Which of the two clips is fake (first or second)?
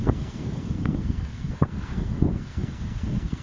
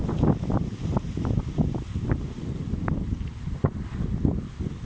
first